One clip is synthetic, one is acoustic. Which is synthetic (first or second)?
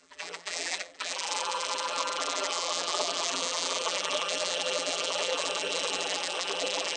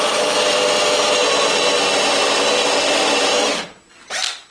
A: first